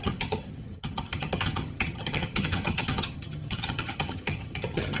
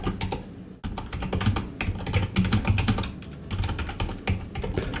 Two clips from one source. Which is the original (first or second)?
second